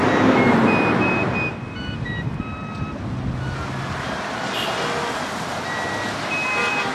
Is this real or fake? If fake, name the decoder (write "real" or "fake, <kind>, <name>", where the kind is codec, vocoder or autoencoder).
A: real